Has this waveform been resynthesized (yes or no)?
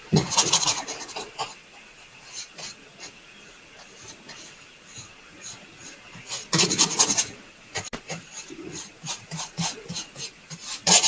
yes